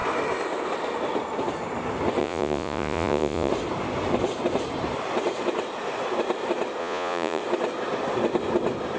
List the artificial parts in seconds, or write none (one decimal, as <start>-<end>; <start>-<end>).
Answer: 2.2-3.5; 6.8-7.4